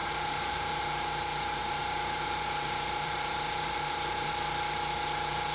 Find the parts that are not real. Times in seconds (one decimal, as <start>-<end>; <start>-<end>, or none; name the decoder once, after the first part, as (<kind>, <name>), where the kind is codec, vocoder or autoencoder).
0.0-0.8 (vocoder, BigVGAN v2); 1.6-4.3